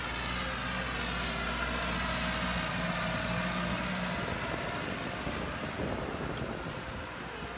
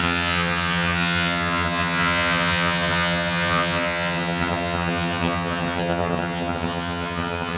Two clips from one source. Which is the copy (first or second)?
second